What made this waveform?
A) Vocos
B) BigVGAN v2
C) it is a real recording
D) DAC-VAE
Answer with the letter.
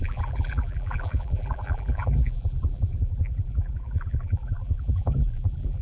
B